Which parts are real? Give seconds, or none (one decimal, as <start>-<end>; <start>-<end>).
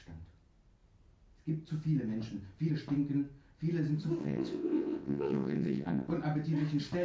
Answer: 0.0-4.2; 6.1-7.0